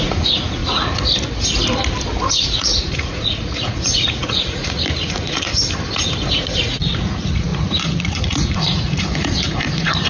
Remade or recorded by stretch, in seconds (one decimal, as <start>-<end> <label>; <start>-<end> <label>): 0.0-0.6 remade; 0.6-2.3 recorded; 2.3-5.5 remade; 5.5-6.3 recorded; 6.3-10.1 remade